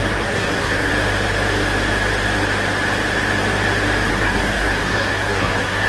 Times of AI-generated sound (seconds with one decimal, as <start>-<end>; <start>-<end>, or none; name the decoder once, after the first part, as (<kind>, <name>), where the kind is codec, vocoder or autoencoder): 0.0-0.9 (codec, SNAC); 4.1-5.9